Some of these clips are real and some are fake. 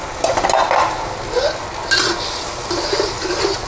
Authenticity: real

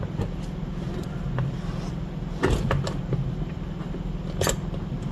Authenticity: real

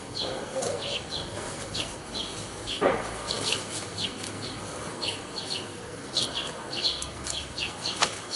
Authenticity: fake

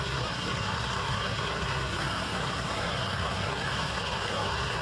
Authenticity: fake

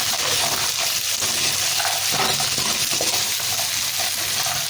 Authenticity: real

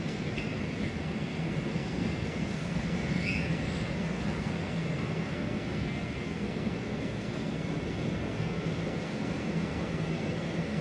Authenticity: fake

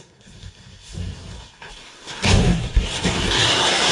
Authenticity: fake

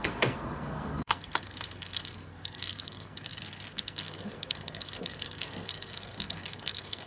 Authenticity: fake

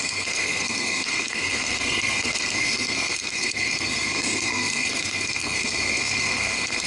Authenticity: fake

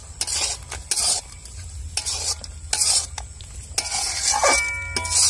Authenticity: real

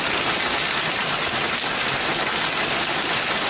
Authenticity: real